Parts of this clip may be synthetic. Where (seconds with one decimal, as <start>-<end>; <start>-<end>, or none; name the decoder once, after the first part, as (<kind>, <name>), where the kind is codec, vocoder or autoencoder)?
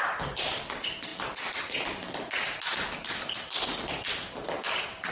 none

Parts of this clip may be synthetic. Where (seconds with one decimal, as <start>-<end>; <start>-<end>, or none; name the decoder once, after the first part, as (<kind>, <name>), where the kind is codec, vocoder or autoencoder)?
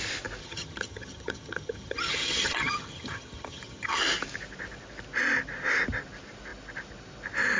0.4-4.0 (vocoder, HiFi-GAN)